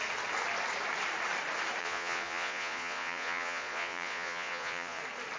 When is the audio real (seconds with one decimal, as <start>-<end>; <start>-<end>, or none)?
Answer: 0.0-1.8; 5.0-5.4